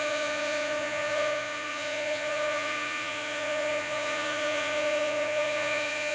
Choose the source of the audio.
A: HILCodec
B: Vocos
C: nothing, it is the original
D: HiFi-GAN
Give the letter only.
B